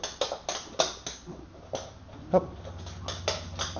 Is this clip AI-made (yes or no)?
no